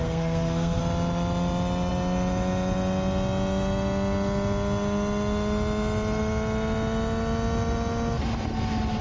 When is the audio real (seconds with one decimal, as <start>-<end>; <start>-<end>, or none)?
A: 0.8-9.0